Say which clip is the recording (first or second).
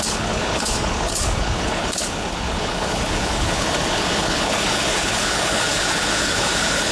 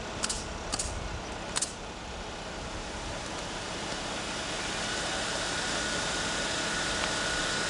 second